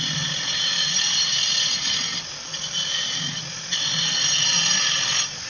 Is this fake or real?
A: fake